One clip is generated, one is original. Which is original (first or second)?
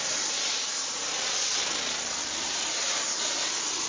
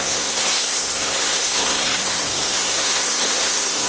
first